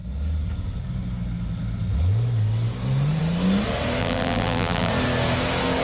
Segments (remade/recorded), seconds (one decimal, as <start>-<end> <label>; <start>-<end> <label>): 0.0-4.0 recorded; 4.0-4.9 remade; 4.9-5.8 recorded